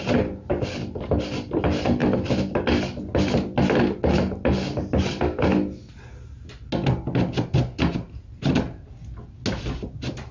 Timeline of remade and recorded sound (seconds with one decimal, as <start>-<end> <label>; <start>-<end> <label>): 0.0-10.3 recorded

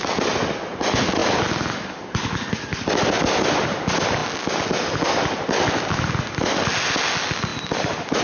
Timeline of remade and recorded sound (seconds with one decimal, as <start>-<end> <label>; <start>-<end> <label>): 0.0-8.2 recorded

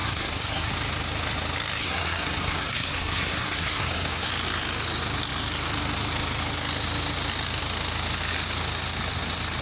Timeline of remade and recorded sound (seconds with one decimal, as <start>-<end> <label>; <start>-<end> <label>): 0.0-0.7 remade; 0.7-1.8 recorded; 1.8-4.3 remade; 4.3-9.6 recorded

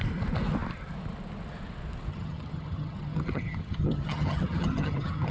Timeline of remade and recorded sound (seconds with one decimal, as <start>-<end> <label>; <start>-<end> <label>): 0.0-2.1 recorded; 2.1-5.3 remade

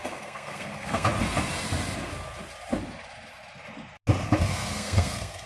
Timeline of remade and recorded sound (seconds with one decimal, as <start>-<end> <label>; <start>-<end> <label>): 0.0-1.1 remade; 1.1-4.4 recorded; 4.4-5.5 remade